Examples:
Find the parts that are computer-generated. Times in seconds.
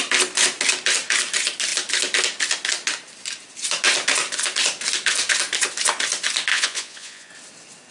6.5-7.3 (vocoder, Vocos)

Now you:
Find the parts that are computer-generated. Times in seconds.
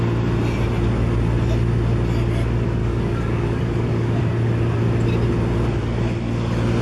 2.8-4.2 (codec, DAC)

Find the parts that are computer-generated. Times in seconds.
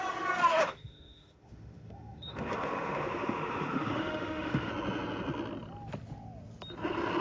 0.5-4.7 (autoencoder, DAC-VAE)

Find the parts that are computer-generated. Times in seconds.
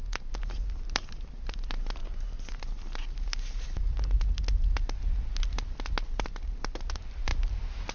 0.0-2.0 (vocoder, BigVGAN v2); 6.2-7.9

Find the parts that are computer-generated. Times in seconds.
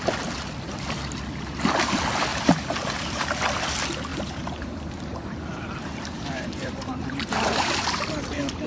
2.3-3.3 (vocoder, BigVGAN v2); 4.1-7.7